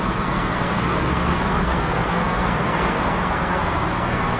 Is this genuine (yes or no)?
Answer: no